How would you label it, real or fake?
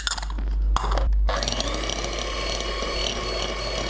real